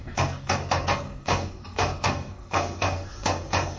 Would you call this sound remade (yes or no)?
yes